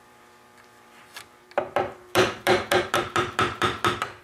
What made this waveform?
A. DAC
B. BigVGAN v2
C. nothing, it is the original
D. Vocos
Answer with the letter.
B